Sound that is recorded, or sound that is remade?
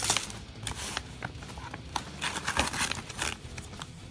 recorded